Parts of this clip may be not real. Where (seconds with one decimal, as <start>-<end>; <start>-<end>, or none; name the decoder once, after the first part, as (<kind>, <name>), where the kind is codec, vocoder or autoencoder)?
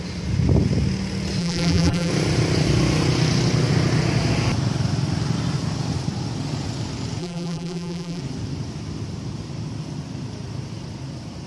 1.4-2.1 (vocoder, BigVGAN v2); 7.2-8.2